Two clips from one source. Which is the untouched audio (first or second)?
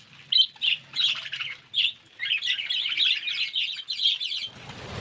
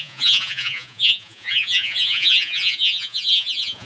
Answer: first